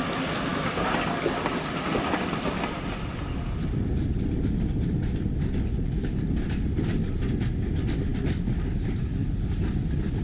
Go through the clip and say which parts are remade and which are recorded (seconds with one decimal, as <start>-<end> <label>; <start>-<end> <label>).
0.0-10.2 recorded